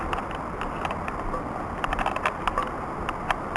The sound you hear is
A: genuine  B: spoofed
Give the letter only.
A